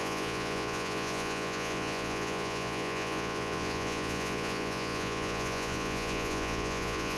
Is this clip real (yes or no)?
no